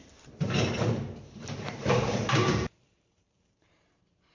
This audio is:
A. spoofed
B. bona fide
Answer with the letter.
A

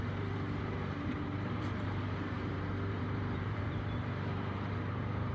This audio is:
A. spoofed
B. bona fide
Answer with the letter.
A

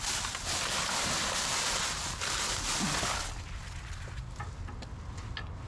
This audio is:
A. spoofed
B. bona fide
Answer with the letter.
B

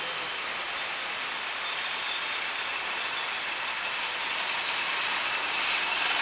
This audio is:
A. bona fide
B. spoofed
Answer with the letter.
A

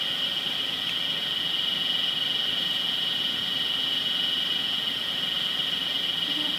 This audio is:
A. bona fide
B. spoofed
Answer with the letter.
A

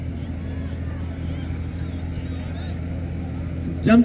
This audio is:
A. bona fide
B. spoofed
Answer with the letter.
A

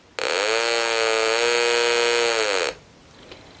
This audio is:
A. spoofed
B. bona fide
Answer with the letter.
B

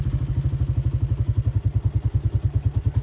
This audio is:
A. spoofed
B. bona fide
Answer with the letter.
B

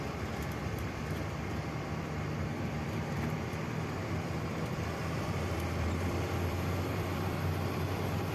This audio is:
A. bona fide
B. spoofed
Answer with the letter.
B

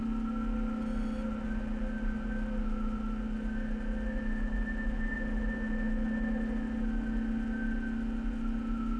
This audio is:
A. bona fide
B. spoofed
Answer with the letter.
A